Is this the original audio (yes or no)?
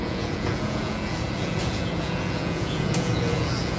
no